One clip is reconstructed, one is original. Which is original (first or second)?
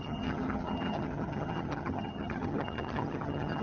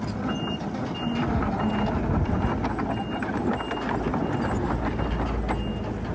second